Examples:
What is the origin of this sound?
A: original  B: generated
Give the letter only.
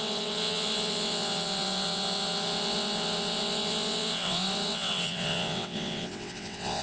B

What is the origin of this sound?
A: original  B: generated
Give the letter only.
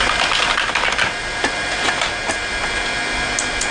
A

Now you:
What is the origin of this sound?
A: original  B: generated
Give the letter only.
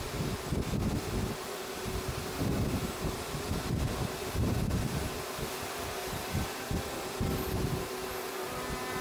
A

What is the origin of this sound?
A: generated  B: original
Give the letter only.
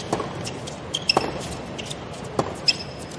B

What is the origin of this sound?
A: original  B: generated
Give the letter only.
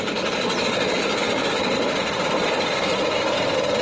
A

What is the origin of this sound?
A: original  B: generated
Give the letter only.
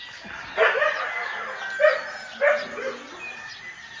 A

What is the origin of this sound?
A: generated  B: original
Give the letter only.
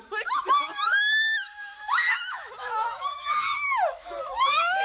A